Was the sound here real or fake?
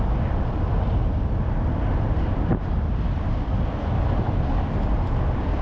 real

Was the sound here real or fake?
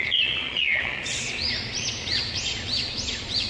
fake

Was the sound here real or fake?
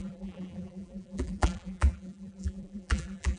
fake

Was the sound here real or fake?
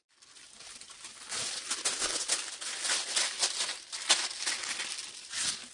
real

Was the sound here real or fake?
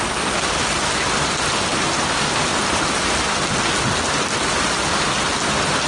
real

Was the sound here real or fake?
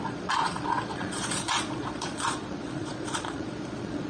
fake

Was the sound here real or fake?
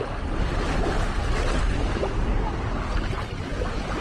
real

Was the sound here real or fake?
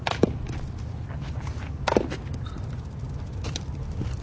real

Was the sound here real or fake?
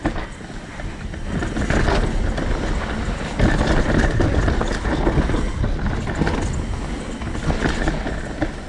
real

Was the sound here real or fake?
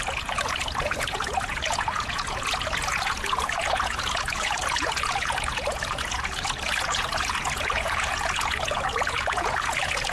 fake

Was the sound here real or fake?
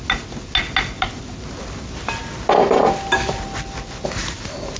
real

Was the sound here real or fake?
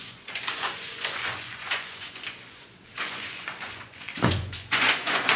fake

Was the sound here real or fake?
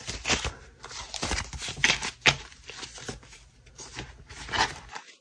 real